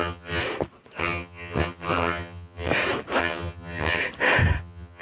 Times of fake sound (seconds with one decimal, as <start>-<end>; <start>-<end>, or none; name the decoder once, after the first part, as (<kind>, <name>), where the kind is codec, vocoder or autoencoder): 0.0-0.4 (vocoder, HiFi-GAN); 1.0-2.7; 3.2-4.0; 4.6-5.0